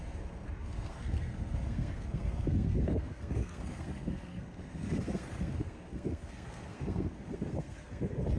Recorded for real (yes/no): no